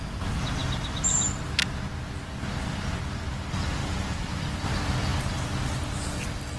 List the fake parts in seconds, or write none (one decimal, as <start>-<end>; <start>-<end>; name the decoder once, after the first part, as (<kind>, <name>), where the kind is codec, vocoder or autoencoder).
3.8-4.3 (vocoder, BigVGAN v2)